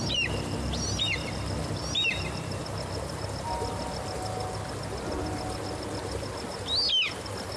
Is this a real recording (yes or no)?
yes